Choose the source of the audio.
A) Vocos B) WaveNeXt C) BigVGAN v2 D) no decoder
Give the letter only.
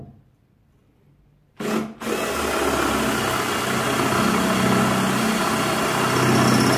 D